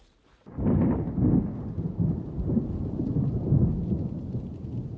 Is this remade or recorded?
recorded